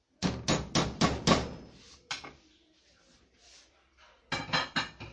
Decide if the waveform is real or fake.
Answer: real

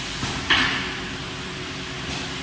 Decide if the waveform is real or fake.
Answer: real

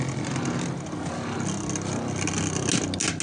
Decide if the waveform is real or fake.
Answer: real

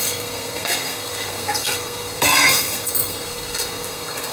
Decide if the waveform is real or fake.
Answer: fake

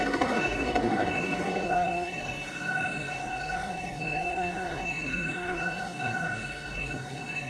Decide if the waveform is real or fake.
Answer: fake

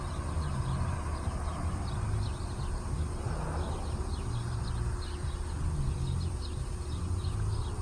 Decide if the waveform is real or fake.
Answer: real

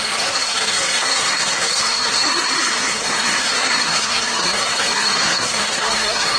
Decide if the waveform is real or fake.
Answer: fake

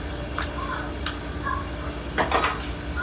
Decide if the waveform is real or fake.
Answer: real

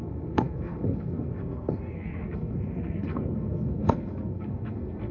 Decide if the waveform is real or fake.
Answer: fake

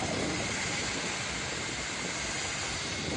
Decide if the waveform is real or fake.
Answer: real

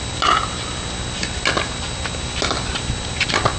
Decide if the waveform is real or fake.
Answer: real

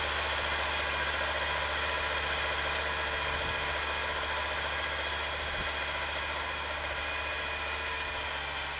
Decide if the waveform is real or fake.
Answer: real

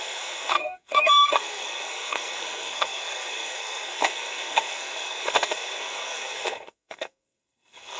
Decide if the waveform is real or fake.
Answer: fake